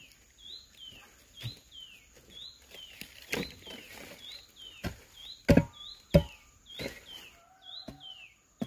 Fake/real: real